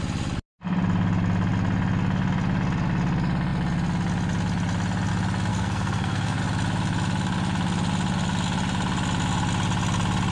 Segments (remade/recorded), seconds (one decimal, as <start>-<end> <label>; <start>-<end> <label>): 0.0-5.5 recorded; 5.5-6.4 remade; 6.4-10.3 recorded

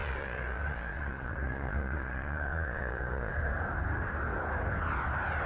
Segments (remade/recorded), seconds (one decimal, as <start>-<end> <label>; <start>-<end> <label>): 0.0-3.3 remade; 3.3-5.5 recorded

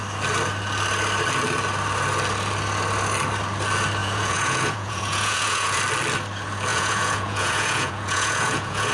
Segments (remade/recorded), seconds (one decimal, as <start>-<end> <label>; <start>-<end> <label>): 0.0-4.0 recorded; 4.0-5.8 remade; 5.8-6.7 recorded; 6.7-8.9 remade

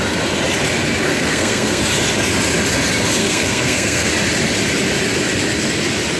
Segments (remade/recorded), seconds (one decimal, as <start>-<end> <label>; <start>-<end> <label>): 0.0-1.1 recorded; 1.1-1.8 remade; 1.8-3.2 recorded; 3.2-4.1 remade; 4.1-6.2 recorded

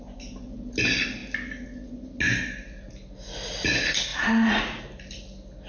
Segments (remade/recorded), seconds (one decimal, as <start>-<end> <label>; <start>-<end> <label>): 0.0-4.1 recorded; 4.1-4.8 remade; 4.8-5.7 recorded